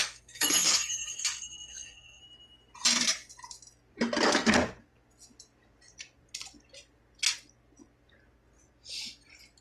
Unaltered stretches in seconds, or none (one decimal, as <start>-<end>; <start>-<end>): 2.2-9.6